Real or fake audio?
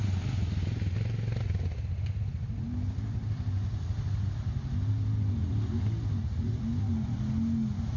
real